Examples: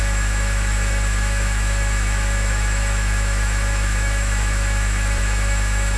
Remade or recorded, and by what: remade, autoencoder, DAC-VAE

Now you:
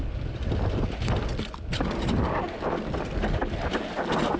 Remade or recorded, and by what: recorded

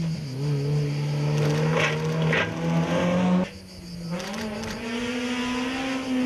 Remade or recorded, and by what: recorded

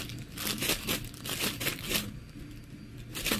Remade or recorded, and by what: recorded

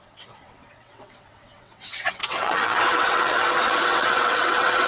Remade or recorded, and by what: remade, vocoder, WaveNeXt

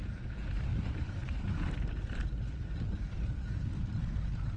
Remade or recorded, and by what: recorded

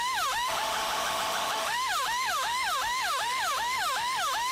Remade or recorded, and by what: remade, autoencoder, DAC-VAE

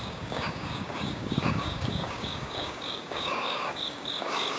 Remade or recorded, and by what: remade, codec, DAC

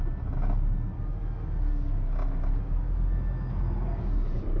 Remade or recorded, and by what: recorded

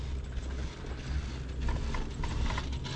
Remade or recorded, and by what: recorded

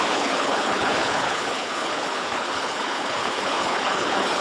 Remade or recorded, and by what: remade, codec, HILCodec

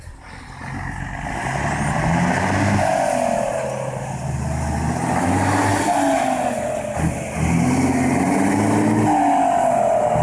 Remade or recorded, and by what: recorded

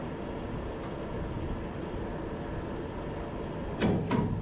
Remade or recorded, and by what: recorded